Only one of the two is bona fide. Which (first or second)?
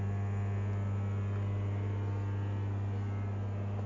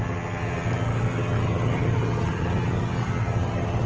first